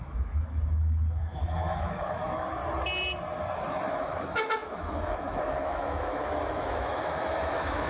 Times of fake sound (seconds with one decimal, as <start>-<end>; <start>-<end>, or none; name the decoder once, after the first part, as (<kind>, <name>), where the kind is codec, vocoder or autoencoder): 0.0-2.6 (autoencoder, DAC-VAE); 3.9-7.9

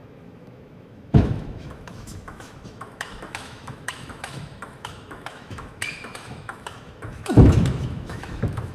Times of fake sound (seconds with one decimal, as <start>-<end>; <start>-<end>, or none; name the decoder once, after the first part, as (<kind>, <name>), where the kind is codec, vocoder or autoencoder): 0.0-8.7 (autoencoder, DAC-VAE)

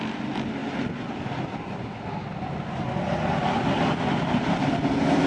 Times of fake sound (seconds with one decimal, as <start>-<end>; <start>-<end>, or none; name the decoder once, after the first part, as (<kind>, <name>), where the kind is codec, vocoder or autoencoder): none

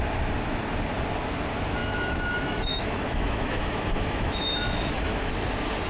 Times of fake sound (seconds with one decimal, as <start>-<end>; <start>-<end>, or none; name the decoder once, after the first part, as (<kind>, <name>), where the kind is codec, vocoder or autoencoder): 1.8-5.3 (autoencoder, DAC-VAE)

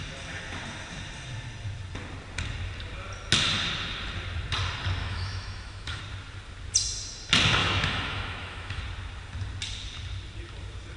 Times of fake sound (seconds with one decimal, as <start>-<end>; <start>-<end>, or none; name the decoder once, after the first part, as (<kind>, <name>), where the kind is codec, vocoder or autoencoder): 5.0-6.0 (autoencoder, DAC-VAE); 7.6-8.8

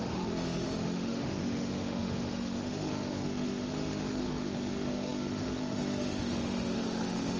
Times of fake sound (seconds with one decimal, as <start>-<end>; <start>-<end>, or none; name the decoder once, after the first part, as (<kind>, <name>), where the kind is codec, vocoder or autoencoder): 0.0-7.4 (autoencoder, DAC-VAE)